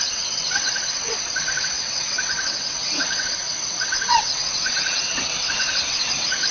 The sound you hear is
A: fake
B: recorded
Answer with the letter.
A